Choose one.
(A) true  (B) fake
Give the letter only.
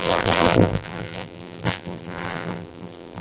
B